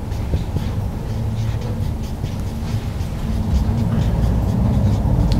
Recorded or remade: recorded